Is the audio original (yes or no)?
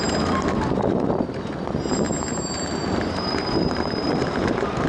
no